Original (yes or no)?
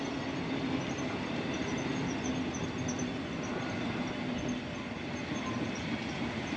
yes